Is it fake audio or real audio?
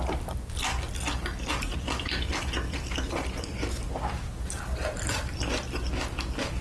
real